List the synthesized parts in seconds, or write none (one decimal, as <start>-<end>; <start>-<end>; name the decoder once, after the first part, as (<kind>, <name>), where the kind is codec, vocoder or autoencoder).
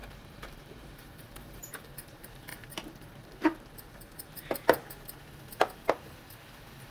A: 0.0-2.5 (vocoder, BigVGAN v2)